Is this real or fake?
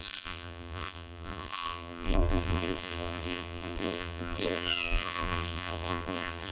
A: fake